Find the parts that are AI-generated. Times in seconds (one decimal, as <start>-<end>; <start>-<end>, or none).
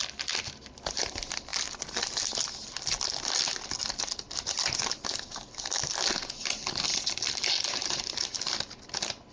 none